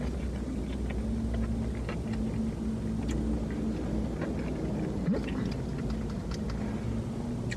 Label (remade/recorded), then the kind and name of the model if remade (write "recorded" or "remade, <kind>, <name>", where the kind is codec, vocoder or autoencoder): recorded